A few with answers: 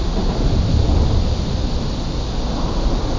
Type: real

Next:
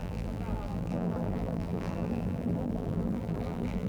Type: fake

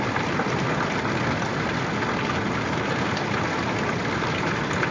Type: real